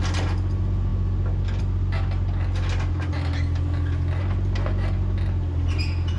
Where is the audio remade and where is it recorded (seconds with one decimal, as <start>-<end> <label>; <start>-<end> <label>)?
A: 0.0-6.2 recorded